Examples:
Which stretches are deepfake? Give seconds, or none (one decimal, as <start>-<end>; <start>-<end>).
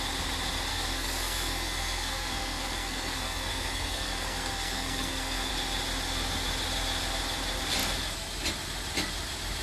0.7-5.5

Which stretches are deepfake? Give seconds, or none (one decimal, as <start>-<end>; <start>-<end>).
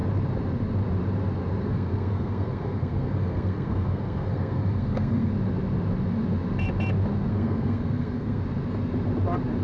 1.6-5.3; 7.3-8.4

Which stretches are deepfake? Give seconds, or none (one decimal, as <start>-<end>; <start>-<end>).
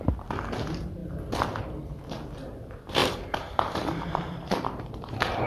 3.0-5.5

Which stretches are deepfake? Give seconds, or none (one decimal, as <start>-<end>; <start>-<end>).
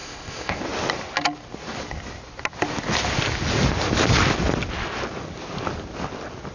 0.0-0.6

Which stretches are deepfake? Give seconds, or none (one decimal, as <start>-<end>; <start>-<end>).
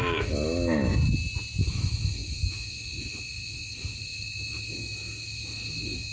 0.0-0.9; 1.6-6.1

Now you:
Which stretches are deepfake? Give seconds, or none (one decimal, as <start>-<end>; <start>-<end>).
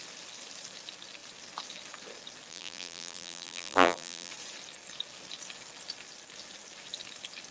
2.5-4.3